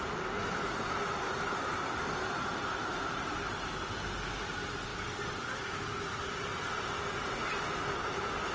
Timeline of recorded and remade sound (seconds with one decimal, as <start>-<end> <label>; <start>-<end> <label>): 0.0-8.5 recorded